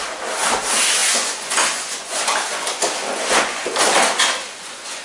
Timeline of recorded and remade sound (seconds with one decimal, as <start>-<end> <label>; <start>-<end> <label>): 0.0-1.0 recorded; 1.0-4.0 remade; 4.0-4.4 recorded; 4.4-5.0 remade